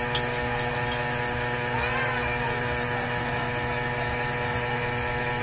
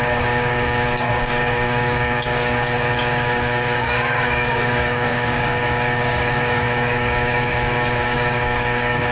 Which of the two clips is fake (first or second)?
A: second